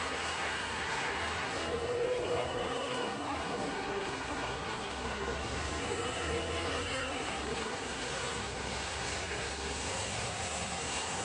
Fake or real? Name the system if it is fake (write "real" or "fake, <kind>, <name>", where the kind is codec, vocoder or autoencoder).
fake, codec, SNAC